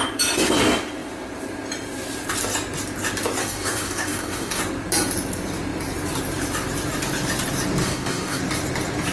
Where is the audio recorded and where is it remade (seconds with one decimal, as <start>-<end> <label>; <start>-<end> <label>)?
0.0-3.4 recorded; 3.4-4.6 remade; 4.6-7.8 recorded; 7.8-8.4 remade; 8.4-9.1 recorded